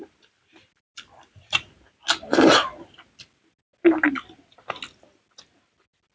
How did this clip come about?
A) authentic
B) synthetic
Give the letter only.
A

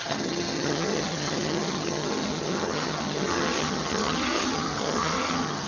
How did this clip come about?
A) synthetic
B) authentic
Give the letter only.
A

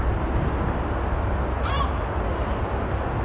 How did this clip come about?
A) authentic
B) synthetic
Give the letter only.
A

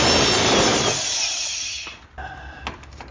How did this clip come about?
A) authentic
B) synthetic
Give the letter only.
A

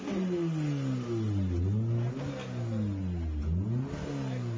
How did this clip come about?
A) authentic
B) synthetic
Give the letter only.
A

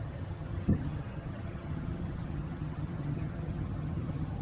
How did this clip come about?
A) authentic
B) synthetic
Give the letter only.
B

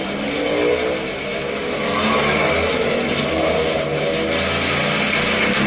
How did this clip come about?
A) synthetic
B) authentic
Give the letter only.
B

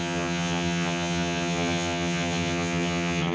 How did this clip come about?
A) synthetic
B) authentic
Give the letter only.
A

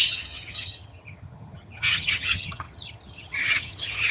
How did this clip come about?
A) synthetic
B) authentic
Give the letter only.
A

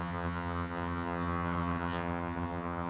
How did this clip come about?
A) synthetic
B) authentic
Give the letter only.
A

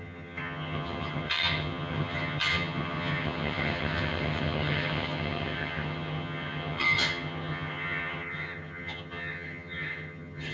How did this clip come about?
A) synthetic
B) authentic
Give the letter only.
A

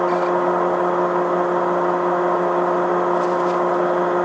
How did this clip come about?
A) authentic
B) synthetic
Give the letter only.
A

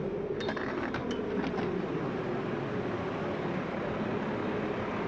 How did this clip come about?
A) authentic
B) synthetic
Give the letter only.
A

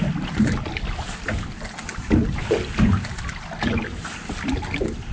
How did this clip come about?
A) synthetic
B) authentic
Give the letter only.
B